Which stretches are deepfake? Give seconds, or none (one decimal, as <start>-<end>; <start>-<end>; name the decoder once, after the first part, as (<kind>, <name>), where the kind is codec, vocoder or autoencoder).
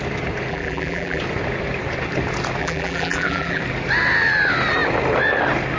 0.5-1.2 (vocoder, BigVGAN v2); 2.6-3.6